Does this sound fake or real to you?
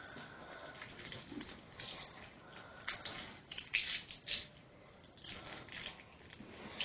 real